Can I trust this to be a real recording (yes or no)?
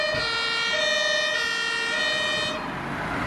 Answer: yes